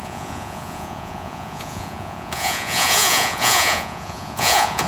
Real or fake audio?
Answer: fake